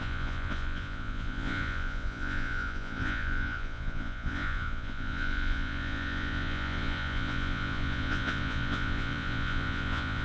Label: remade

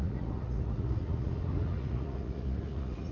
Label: remade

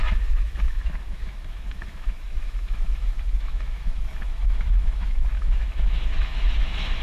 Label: remade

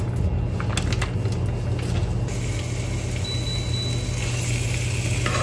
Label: recorded